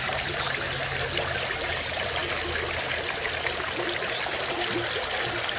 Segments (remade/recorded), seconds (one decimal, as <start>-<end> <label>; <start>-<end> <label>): 0.0-0.8 remade; 0.8-1.6 recorded; 1.6-2.2 remade; 2.2-5.6 recorded